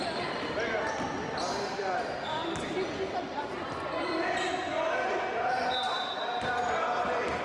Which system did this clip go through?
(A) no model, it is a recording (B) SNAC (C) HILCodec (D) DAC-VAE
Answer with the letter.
A